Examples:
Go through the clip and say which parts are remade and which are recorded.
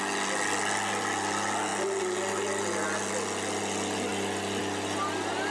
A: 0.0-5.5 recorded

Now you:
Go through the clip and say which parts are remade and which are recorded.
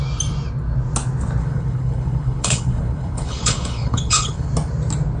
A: 0.0-1.4 recorded; 1.4-4.5 remade; 4.5-5.2 recorded